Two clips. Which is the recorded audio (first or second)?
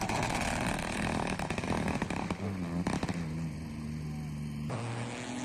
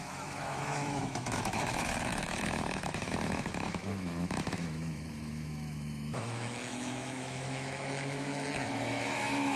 first